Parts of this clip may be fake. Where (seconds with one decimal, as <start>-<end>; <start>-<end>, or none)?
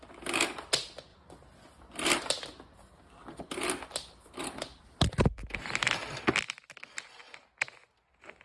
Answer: none